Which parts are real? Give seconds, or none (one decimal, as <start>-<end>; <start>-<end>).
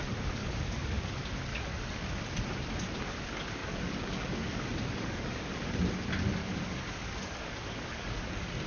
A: 0.0-0.4; 1.0-1.5; 2.0-3.6; 5.8-6.4